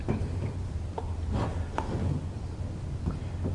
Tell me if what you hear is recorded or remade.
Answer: recorded